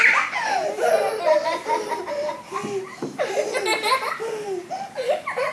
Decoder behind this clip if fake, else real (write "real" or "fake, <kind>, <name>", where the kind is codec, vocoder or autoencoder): real